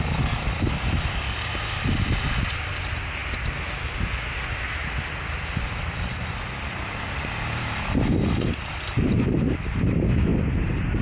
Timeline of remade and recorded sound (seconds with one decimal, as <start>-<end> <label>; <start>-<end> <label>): 0.0-11.0 recorded

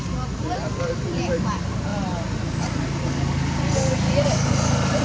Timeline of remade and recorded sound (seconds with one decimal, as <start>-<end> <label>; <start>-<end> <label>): 0.0-5.0 recorded

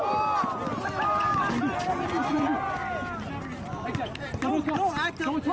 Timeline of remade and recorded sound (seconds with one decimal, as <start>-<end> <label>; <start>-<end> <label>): 0.0-5.5 recorded

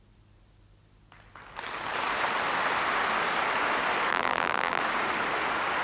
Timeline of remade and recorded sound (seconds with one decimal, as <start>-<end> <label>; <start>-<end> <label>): 0.0-4.1 recorded; 4.1-4.8 remade; 4.8-5.8 recorded